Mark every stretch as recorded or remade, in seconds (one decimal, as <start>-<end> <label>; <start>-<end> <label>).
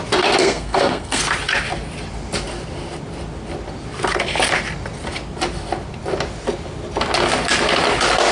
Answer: 0.0-0.4 recorded; 0.4-1.2 remade; 1.2-8.3 recorded